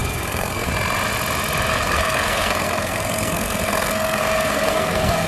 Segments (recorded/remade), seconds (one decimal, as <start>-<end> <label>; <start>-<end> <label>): 0.0-0.7 remade; 0.7-1.7 recorded; 1.7-5.3 remade